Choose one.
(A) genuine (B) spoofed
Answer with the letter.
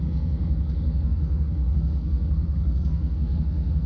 B